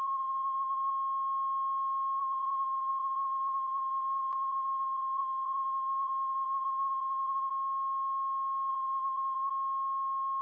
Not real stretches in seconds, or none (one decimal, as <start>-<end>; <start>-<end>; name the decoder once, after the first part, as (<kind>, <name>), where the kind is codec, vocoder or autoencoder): 0.0-0.9 (vocoder, BigVGAN v2); 2.2-7.5; 8.7-9.5